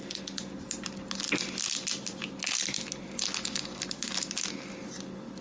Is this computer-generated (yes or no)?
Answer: no